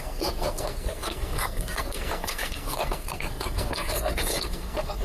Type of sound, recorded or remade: remade